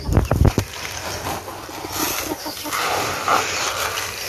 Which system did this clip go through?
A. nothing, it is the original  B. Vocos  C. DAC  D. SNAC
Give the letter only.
A